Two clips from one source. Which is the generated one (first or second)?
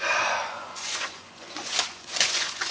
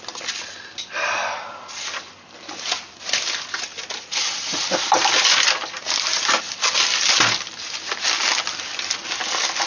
first